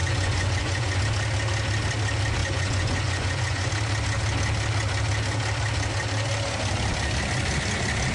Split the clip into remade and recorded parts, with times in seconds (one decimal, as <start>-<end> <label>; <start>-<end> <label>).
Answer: 0.0-1.0 remade; 1.0-2.4 recorded; 2.4-3.7 remade; 3.7-8.1 recorded